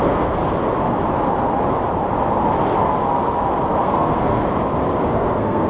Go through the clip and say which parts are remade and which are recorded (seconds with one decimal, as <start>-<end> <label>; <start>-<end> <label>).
0.0-0.4 remade; 0.4-3.8 recorded; 3.8-4.4 remade; 4.4-5.0 recorded; 5.0-5.7 remade